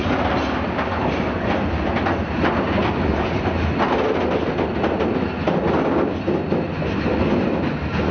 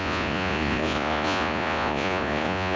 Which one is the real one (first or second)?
first